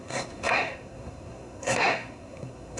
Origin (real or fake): fake